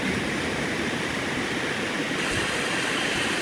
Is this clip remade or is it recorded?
recorded